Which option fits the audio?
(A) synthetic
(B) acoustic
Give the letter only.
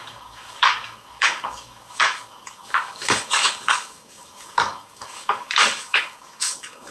A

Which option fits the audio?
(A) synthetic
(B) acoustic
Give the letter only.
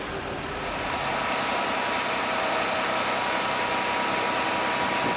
B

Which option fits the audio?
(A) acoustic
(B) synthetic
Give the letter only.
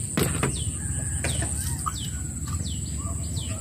A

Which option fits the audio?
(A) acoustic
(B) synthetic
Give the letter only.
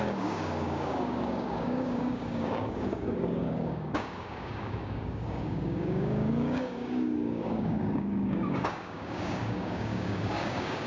B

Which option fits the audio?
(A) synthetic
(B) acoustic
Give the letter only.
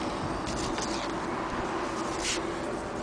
B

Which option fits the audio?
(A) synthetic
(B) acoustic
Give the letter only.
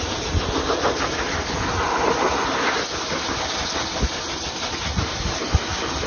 B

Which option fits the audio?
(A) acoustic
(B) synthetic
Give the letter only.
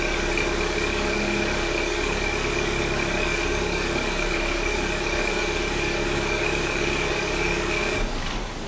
B